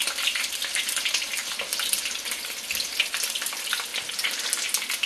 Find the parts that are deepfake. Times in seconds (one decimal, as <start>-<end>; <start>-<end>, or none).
none